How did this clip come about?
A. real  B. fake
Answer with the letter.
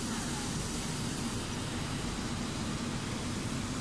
A